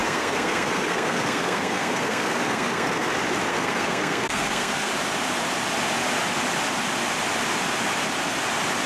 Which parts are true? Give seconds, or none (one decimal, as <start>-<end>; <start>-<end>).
3.1-3.5; 4.9-8.9